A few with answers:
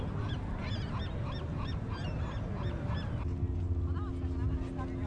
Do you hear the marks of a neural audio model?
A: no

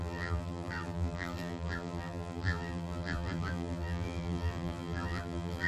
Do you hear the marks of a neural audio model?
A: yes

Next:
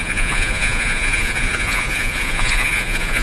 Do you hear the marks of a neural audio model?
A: yes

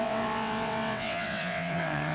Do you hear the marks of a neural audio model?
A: yes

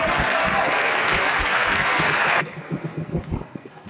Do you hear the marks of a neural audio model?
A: yes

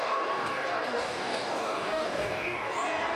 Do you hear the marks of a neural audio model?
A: yes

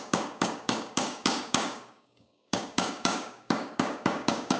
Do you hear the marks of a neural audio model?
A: yes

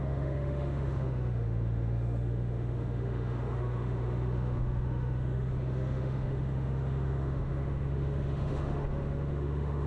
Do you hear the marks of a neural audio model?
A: yes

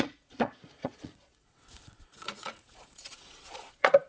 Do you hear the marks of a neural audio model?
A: yes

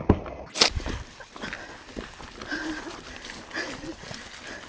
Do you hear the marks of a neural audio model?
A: no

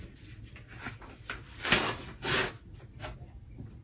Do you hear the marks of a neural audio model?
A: no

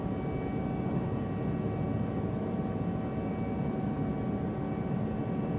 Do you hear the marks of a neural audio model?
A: no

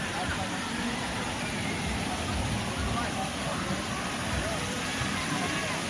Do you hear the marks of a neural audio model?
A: no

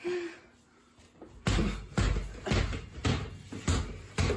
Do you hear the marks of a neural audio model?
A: no